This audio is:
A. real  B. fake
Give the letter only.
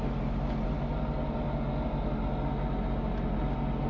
A